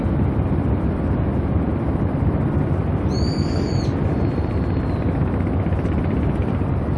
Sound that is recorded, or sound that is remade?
recorded